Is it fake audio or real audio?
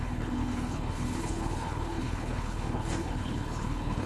fake